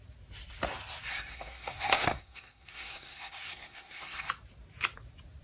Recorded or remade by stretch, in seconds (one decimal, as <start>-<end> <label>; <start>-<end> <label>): 0.0-1.1 recorded; 1.1-4.3 remade; 4.3-5.4 recorded

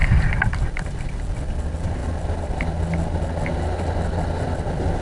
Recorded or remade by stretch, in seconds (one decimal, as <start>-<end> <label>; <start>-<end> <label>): 0.0-5.0 recorded

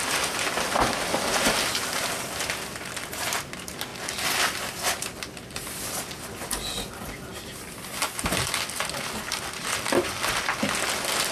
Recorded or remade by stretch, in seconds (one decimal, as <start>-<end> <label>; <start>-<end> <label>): 0.0-11.3 recorded